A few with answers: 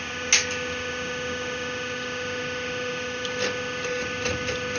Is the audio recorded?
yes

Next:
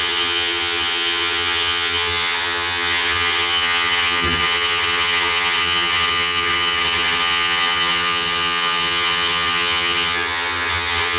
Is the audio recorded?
no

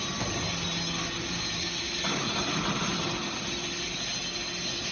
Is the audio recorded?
yes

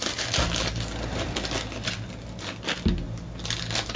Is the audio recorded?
yes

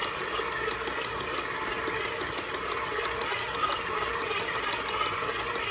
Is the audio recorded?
yes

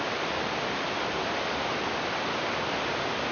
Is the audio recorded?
yes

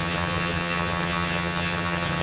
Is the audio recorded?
no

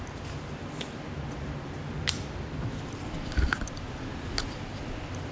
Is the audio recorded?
yes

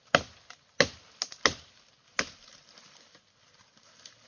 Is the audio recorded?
yes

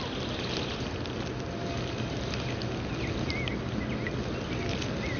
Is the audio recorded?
yes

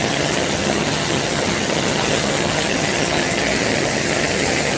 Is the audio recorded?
no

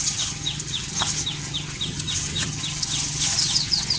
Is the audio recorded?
no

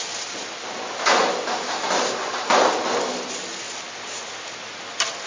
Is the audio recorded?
yes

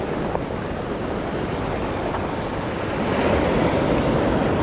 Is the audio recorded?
yes